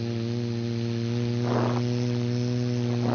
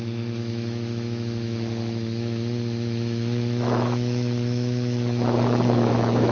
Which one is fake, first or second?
second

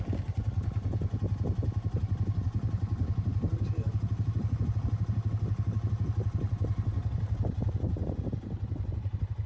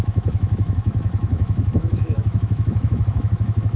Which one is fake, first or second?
second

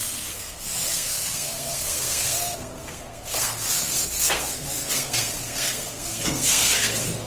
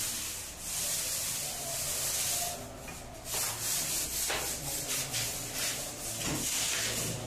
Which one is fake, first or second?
first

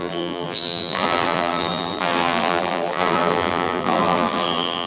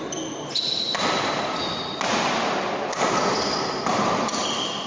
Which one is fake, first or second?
first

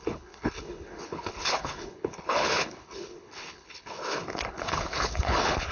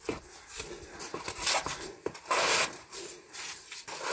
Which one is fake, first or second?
first